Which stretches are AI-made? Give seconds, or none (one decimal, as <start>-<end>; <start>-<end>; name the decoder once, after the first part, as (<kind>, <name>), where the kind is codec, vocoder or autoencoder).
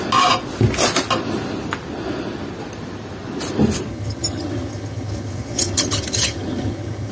3.9-7.1 (vocoder, HiFi-GAN)